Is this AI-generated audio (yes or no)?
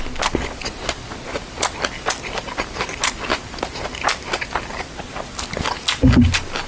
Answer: no